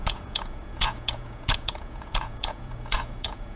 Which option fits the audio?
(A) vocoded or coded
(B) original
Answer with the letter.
A